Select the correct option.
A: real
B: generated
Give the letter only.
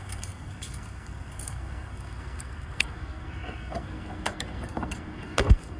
B